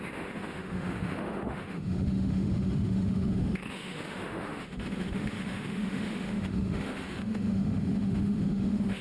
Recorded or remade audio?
remade